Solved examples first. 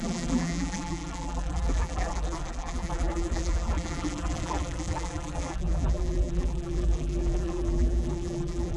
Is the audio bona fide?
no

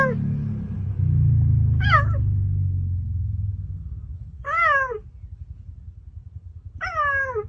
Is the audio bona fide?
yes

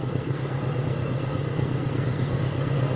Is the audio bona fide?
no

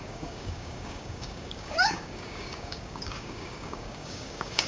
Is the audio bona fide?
no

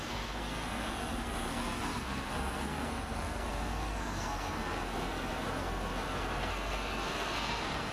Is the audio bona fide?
no